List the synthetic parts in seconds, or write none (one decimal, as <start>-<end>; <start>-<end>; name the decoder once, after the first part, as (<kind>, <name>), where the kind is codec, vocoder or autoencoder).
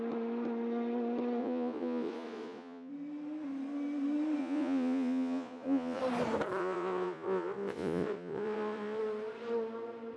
1.4-2.9 (vocoder, Vocos); 4.4-6.0; 6.6-9.0